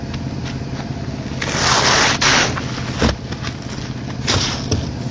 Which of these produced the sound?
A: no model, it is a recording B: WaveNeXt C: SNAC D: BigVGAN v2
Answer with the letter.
A